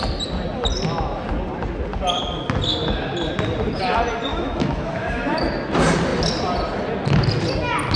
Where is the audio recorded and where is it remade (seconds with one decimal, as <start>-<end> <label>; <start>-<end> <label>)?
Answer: 0.0-4.3 recorded; 4.3-5.4 remade; 5.4-8.0 recorded